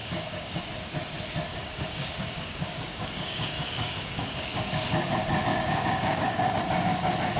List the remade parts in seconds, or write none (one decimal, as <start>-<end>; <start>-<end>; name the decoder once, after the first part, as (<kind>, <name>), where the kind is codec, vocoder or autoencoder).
0.0-0.6 (codec, DAC); 1.6-4.9; 5.5-6.6